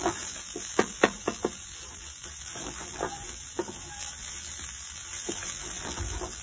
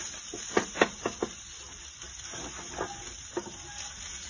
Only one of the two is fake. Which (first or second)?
first